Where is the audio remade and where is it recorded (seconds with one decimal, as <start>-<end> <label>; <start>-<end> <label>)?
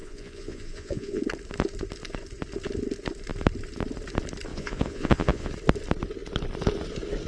0.0-1.2 remade; 1.2-4.5 recorded; 4.5-5.5 remade; 5.5-7.3 recorded